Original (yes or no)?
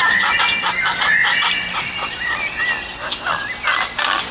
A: yes